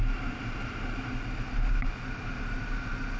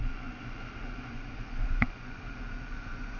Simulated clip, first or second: second